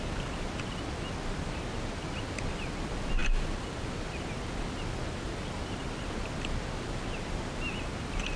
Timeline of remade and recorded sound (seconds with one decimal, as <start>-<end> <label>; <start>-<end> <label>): 0.0-8.4 recorded

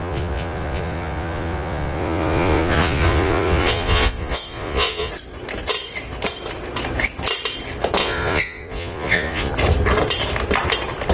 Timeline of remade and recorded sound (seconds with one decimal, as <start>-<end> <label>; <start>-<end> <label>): 0.0-5.1 remade; 5.1-8.0 recorded; 8.0-9.5 remade; 9.5-11.1 recorded

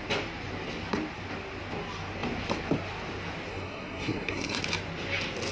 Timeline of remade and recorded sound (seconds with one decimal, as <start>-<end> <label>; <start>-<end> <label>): 0.0-3.5 recorded; 3.5-4.6 remade; 4.6-5.5 recorded

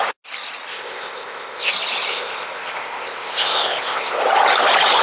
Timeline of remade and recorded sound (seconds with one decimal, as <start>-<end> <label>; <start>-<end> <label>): 0.0-0.7 recorded; 0.7-1.7 remade; 1.7-2.1 recorded; 2.1-4.2 remade; 4.2-5.0 recorded